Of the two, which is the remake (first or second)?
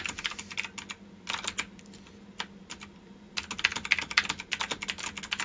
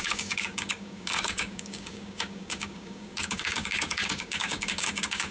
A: second